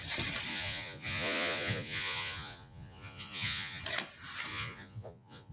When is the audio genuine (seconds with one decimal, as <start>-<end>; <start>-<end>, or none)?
0.0-0.5; 3.8-4.5